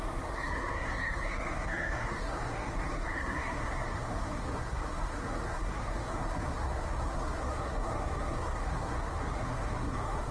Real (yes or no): no